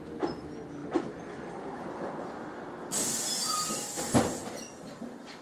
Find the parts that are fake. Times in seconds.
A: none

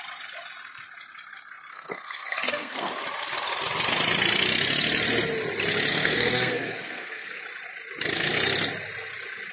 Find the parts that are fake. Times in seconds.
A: 1.7-2.9 (codec, SNAC); 5.9-7.4

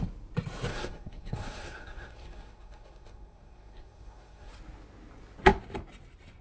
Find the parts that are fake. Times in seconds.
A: 0.7-4.5 (codec, SNAC)

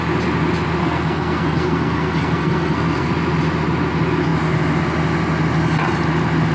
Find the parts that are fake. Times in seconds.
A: 0.8-3.1 (codec, SNAC)